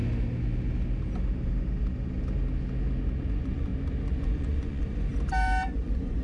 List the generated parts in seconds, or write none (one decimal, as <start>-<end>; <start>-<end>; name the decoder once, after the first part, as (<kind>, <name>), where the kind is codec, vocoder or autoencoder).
3.3-3.7 (vocoder, Vocos); 4.2-5.1; 5.8-6.2